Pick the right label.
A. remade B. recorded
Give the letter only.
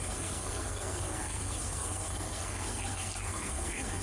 A